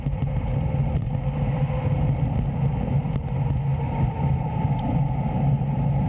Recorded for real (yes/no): yes